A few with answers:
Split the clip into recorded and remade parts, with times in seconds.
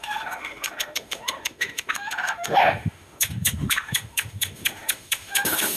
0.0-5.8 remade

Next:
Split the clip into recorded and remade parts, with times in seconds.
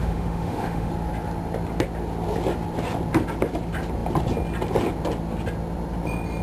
0.0-0.9 remade; 0.9-6.4 recorded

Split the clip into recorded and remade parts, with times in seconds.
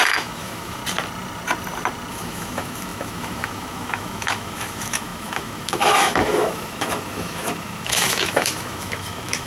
0.0-0.8 remade; 0.8-2.1 recorded; 2.1-9.5 remade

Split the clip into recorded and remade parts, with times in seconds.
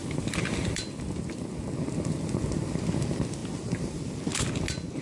0.0-5.0 recorded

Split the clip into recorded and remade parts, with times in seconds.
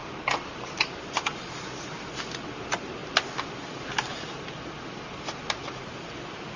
0.0-6.6 recorded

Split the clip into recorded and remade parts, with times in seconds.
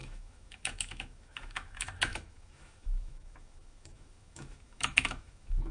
0.0-5.7 remade